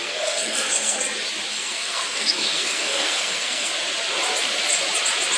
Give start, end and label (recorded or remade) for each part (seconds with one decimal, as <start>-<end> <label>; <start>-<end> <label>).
0.0-1.0 remade; 1.0-1.5 recorded; 1.5-3.7 remade; 3.7-5.4 recorded